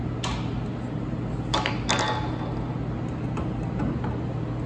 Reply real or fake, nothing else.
real